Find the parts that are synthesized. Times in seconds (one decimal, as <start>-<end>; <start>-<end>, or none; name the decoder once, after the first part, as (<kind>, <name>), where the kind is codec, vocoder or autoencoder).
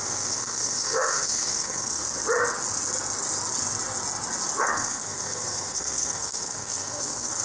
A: 0.0-2.0 (codec, SNAC); 4.6-7.4